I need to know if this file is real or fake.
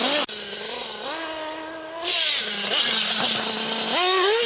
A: real